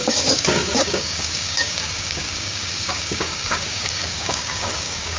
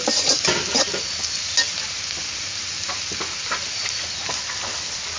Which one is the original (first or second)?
second